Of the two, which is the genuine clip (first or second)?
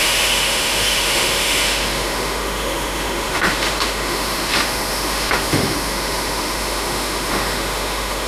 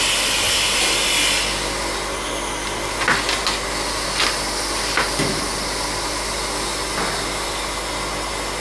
second